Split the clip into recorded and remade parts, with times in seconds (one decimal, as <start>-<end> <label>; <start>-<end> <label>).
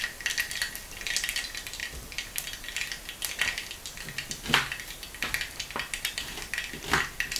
0.0-7.4 recorded